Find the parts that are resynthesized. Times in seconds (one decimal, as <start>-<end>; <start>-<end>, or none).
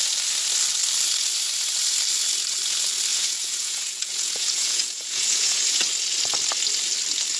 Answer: 3.1-5.8